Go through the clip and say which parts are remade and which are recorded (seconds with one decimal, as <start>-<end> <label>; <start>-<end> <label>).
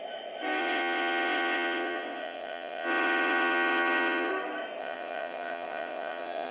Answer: 0.0-0.6 recorded; 0.6-4.3 remade; 4.3-4.8 recorded; 4.8-6.5 remade